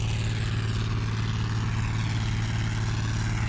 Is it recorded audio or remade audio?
recorded